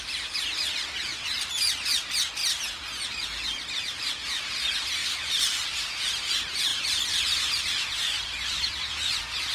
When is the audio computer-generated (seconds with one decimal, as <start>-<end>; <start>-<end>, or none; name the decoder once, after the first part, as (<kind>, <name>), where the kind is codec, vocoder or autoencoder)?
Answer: none